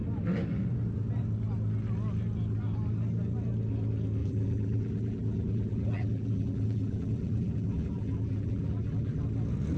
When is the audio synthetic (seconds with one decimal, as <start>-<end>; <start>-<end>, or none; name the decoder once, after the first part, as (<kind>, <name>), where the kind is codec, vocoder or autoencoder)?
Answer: 4.2-9.2 (vocoder, BigVGAN v2)